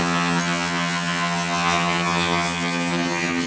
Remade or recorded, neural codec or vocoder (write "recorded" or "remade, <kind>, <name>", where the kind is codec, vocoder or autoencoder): remade, vocoder, HiFi-GAN